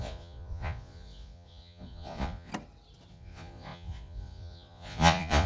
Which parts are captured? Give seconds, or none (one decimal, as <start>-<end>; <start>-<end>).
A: 2.5-3.1